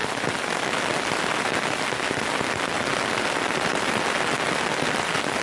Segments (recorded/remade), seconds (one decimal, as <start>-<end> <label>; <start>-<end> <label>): 0.0-5.4 recorded